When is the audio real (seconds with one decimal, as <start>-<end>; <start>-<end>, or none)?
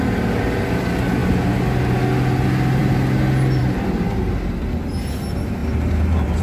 0.0-6.4